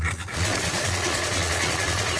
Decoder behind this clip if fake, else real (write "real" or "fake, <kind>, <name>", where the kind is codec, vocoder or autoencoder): fake, vocoder, Vocos